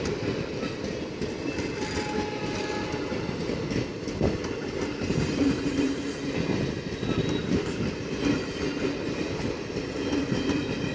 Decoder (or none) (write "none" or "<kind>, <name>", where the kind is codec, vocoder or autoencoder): none